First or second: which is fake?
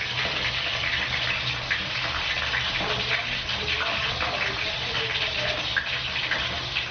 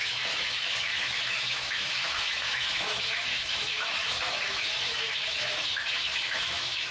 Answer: second